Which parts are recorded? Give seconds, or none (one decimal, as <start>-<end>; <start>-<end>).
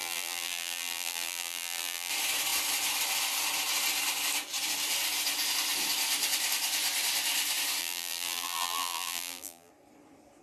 2.1-7.8; 9.7-10.4